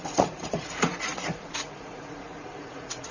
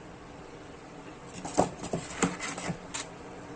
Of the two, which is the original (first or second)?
second